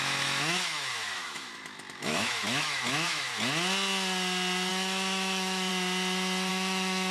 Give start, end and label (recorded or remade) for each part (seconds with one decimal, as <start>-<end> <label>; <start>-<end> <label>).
0.0-3.3 remade; 3.3-4.7 recorded; 4.7-5.7 remade; 5.7-6.5 recorded; 6.5-7.1 remade

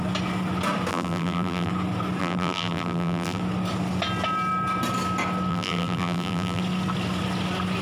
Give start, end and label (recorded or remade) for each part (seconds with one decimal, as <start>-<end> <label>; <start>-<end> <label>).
0.0-0.9 recorded; 0.9-1.7 remade; 1.7-2.2 recorded; 2.2-3.4 remade; 3.4-5.5 recorded; 5.5-6.6 remade; 6.6-7.8 recorded

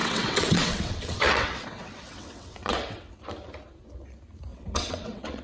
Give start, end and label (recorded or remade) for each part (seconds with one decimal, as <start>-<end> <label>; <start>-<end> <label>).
0.0-3.2 remade; 3.2-4.5 recorded; 4.5-5.4 remade

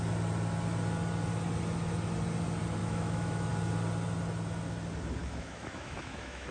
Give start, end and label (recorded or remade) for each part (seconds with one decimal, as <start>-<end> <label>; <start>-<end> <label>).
0.0-2.8 recorded; 2.8-3.5 remade; 3.5-5.2 recorded; 5.2-6.5 remade